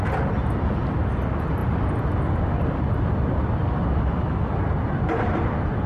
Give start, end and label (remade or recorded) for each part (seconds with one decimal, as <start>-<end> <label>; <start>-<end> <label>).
0.0-5.9 recorded